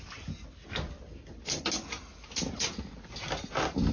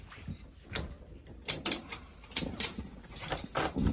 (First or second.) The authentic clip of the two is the first